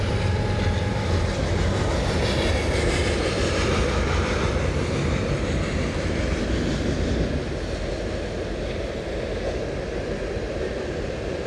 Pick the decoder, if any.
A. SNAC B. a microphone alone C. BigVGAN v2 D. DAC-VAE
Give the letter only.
B